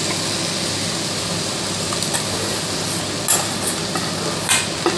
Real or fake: real